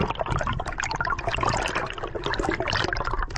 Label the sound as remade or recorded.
recorded